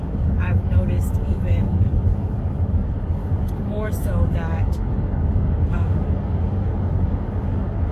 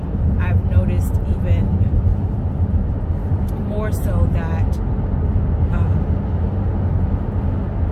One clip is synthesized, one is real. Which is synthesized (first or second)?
first